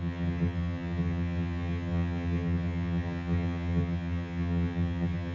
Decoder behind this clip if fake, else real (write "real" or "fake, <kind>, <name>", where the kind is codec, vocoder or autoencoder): fake, vocoder, HiFi-GAN